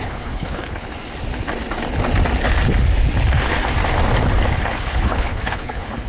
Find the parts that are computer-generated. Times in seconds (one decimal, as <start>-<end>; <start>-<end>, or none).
0.0-0.9; 4.6-6.1

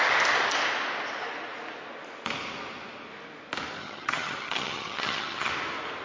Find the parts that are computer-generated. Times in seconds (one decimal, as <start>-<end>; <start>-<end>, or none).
3.8-5.5

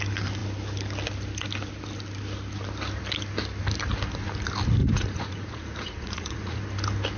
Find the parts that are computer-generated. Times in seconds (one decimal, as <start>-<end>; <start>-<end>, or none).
4.8-6.6

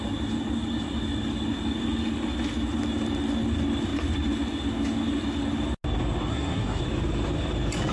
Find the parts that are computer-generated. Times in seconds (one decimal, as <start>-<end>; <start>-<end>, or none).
6.3-6.8

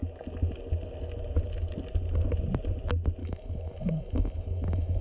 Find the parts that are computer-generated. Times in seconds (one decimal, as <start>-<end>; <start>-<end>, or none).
3.2-5.0

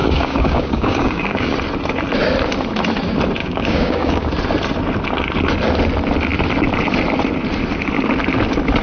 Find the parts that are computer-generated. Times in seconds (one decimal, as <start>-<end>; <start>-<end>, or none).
0.0-1.5; 3.4-4.3

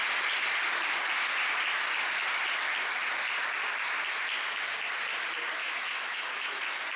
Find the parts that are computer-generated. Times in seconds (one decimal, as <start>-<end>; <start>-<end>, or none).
5.6-6.6

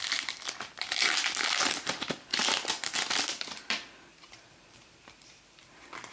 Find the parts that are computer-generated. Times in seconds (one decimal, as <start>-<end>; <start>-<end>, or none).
0.0-2.4; 3.4-6.1